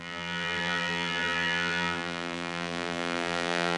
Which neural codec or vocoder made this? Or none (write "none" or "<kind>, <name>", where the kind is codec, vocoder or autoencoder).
vocoder, BigVGAN v2